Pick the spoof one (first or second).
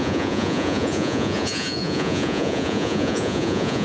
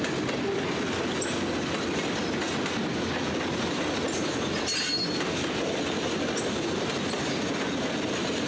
first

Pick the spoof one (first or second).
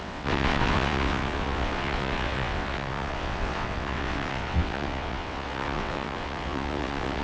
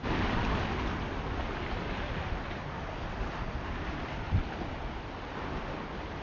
first